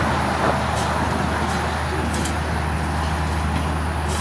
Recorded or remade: recorded